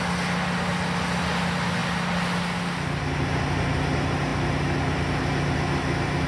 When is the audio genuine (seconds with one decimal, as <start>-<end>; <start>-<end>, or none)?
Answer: 0.0-6.3